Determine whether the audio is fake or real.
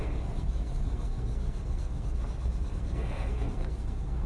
fake